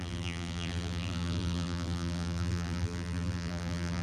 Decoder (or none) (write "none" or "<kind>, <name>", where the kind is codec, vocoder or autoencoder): vocoder, BigVGAN v2